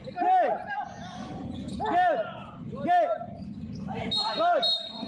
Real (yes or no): yes